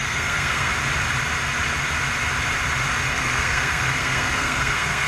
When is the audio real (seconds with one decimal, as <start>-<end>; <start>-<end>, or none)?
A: 0.7-3.1